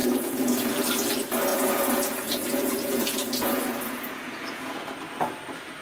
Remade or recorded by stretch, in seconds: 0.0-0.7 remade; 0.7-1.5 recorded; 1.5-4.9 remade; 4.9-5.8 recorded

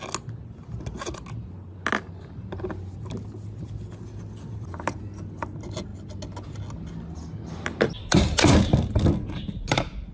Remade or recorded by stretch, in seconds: 0.0-10.1 recorded

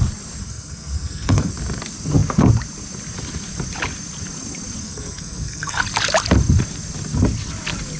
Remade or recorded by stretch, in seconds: 0.0-0.4 recorded; 0.4-1.5 remade; 1.5-4.8 recorded; 4.8-5.8 remade; 5.8-8.0 recorded